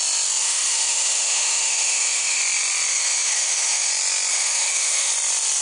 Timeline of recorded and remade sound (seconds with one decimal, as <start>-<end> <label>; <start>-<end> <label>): 0.0-0.4 recorded; 0.4-2.4 remade; 2.4-2.9 recorded; 2.9-3.9 remade; 3.9-4.3 recorded; 4.3-5.1 remade; 5.1-5.6 recorded